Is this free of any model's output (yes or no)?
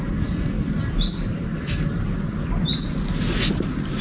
yes